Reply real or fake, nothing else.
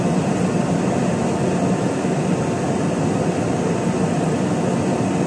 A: real